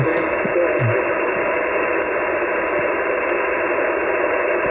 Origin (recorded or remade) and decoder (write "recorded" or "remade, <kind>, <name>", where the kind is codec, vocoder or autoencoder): recorded